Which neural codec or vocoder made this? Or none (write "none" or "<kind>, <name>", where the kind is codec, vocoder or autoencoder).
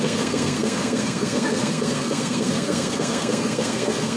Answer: codec, SNAC